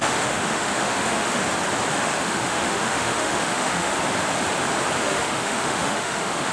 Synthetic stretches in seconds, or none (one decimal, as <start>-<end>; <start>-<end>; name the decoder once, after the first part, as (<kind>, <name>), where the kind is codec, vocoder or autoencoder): 0.0-1.4 (autoencoder, DAC-VAE); 1.9-4.0; 5.0-6.5